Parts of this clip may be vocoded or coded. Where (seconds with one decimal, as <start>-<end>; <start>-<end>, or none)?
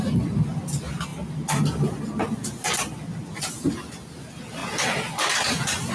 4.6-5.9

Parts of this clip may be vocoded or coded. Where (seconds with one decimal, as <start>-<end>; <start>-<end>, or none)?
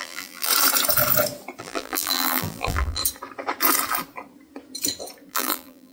0.0-0.5; 1.6-3.0; 5.3-5.9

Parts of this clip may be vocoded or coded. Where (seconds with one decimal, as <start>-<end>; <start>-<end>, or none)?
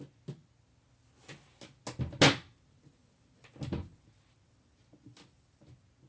none